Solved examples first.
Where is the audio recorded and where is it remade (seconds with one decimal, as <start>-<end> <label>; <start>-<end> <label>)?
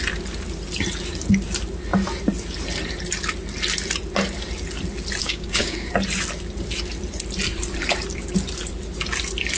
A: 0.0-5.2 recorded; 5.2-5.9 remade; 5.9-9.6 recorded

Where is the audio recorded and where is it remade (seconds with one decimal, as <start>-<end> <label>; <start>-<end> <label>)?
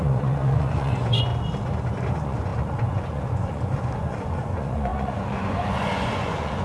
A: 0.0-1.3 remade; 1.3-2.1 recorded; 2.1-6.6 remade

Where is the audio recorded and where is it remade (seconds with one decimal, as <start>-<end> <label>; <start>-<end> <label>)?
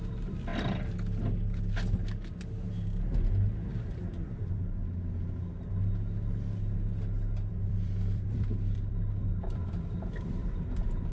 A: 0.0-0.5 remade; 0.5-3.7 recorded; 3.7-4.8 remade; 4.8-7.5 recorded; 7.5-11.1 remade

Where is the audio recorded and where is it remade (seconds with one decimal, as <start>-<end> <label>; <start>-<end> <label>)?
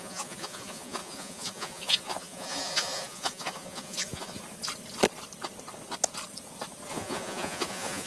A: 0.0-4.4 remade; 4.4-6.9 recorded; 6.9-8.1 remade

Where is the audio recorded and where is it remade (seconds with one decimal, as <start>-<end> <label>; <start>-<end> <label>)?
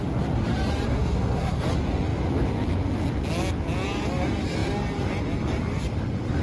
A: 0.0-0.9 recorded; 0.9-1.6 remade; 1.6-6.4 recorded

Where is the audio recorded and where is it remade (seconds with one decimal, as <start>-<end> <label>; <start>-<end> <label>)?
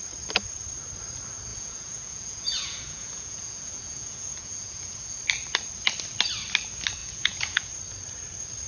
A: 0.0-1.5 recorded; 1.5-5.2 remade; 5.2-7.0 recorded; 7.0-7.7 remade; 7.7-8.7 recorded